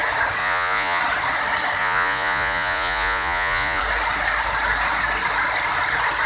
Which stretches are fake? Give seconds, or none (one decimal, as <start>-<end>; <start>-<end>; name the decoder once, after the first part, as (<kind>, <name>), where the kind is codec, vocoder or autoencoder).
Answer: 0.4-1.0 (vocoder, Vocos); 1.8-3.8